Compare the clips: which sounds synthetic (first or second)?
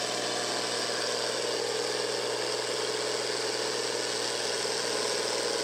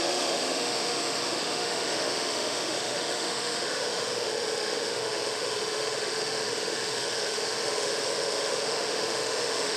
second